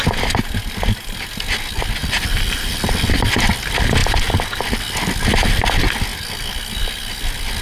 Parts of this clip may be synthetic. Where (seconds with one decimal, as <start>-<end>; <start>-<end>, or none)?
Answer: 2.0-2.9; 4.0-4.6